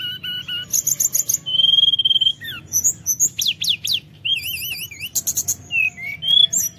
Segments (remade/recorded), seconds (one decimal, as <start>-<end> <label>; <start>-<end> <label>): 0.0-6.8 recorded